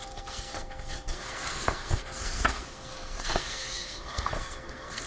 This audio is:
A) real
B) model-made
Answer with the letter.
B